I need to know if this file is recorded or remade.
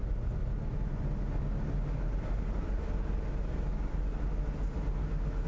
recorded